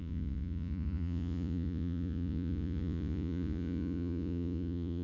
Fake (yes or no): yes